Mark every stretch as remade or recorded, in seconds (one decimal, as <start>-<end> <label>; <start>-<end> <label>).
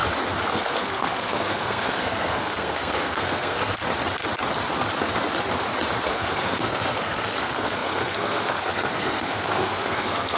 0.0-0.5 recorded; 0.5-3.8 remade; 3.8-6.1 recorded; 6.1-10.4 remade